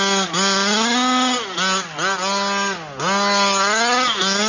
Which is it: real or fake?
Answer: real